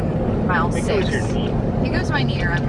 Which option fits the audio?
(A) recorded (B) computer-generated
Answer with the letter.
A